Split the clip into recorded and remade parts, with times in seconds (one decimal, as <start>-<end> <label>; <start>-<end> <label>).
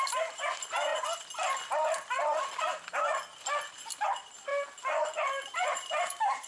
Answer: 0.0-0.9 remade; 0.9-3.7 recorded; 3.7-4.5 remade; 4.5-5.7 recorded; 5.7-6.5 remade